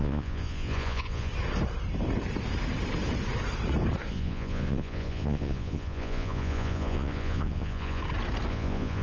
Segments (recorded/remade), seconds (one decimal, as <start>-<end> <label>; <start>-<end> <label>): 0.0-1.3 remade; 1.3-4.1 recorded; 4.1-8.0 remade; 8.0-8.5 recorded; 8.5-9.0 remade